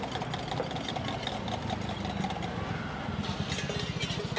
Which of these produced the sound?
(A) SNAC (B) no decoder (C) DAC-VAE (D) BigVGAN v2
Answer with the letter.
B